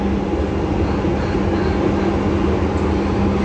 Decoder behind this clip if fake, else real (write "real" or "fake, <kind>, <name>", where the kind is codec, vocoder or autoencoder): real